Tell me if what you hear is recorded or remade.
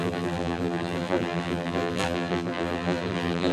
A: remade